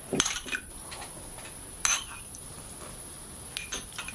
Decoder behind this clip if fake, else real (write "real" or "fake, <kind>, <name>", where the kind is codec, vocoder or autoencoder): real